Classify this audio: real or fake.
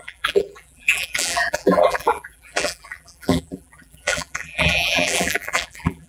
fake